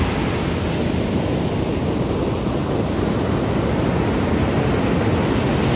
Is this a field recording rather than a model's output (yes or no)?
yes